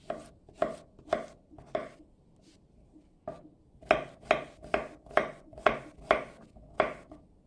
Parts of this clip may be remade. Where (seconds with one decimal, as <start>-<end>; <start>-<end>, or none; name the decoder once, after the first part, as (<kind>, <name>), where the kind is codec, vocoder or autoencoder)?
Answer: 5.2-5.7 (vocoder, Vocos)